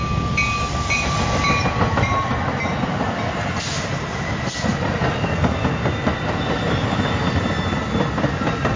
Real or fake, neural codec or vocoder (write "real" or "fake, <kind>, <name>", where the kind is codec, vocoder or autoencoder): real